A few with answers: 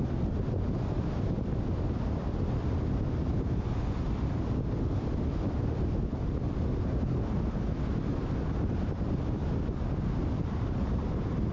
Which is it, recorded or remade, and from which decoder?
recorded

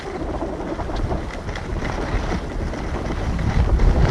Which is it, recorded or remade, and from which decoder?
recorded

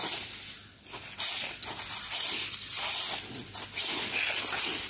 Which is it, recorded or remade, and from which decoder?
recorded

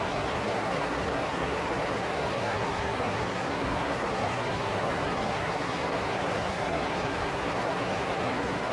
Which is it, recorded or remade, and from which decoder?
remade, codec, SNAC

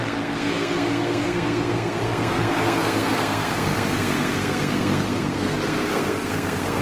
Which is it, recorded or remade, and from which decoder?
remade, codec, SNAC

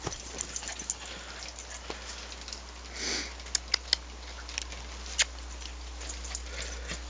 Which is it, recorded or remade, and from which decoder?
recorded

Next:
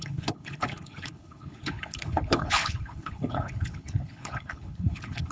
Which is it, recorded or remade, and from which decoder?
remade, codec, HILCodec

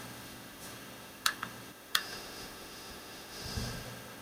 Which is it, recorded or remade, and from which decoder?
remade, autoencoder, DAC-VAE